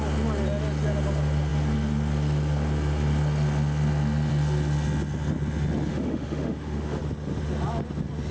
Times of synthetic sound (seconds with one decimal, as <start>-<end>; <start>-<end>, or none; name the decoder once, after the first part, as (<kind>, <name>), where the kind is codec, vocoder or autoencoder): 5.9-7.0 (autoencoder, DAC-VAE)